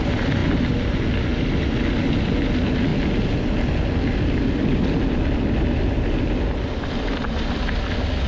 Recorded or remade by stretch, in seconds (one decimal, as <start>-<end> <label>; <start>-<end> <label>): 0.0-8.3 recorded